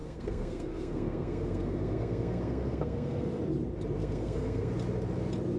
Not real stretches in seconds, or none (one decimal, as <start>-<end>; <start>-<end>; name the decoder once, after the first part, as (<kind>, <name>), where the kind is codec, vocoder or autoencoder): 0.0-3.4 (codec, SNAC); 4.0-4.7